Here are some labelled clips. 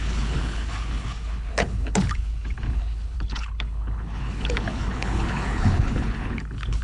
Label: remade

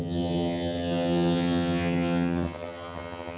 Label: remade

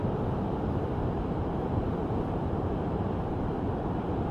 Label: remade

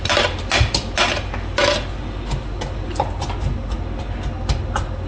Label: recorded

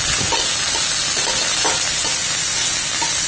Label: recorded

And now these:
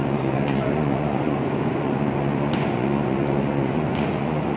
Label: remade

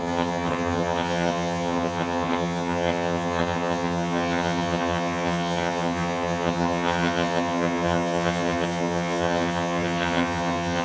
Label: remade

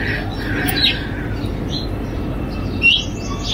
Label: recorded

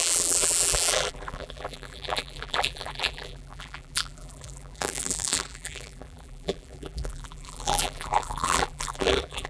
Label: remade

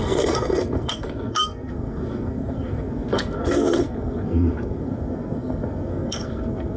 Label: remade